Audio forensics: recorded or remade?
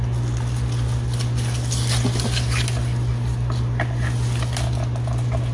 recorded